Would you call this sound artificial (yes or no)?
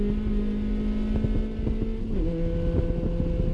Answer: no